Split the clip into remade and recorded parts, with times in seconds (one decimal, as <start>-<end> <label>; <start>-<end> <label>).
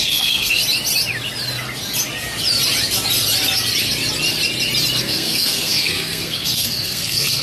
0.0-0.6 remade; 0.6-5.0 recorded; 5.0-7.4 remade